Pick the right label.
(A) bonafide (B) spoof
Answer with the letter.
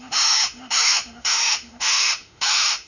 B